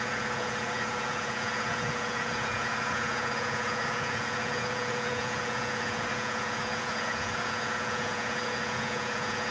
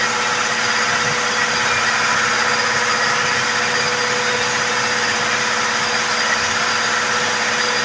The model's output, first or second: first